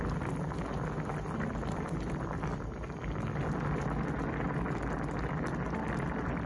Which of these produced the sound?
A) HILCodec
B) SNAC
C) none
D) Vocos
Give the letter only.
C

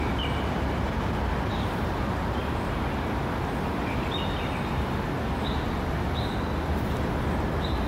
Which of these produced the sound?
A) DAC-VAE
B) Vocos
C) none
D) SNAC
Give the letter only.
C